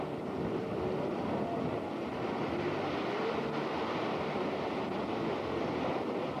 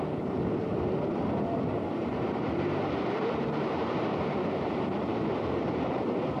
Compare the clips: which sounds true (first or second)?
first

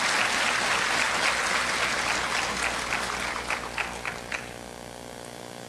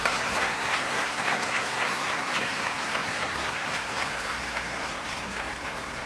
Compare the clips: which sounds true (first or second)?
first